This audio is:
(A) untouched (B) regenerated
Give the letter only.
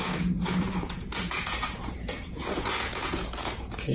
B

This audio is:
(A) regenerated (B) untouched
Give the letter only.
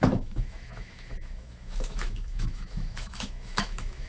A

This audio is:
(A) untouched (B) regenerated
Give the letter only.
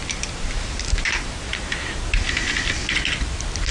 A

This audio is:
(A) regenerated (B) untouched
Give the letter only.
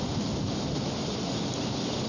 B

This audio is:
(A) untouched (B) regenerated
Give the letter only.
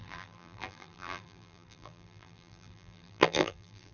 B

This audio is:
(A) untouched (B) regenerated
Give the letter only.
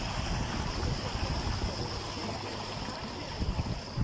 A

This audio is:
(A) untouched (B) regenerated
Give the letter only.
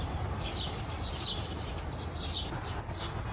A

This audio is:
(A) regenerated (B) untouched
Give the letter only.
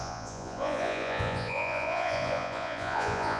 A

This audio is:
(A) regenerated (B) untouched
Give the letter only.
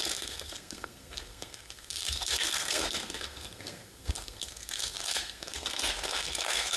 A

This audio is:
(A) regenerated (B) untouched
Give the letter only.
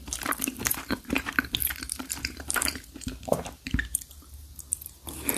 A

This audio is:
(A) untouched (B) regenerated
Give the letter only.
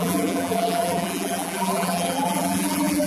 B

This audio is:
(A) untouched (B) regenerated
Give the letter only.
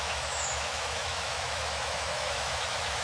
B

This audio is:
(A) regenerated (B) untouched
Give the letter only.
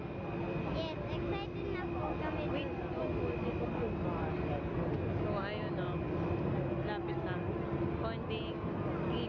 B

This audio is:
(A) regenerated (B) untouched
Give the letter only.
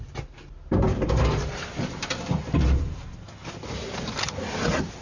B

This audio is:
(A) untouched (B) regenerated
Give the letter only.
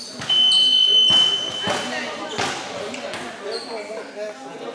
A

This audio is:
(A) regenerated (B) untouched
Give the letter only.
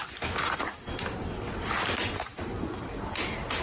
B